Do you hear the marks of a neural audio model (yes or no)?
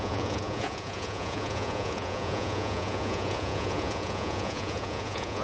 yes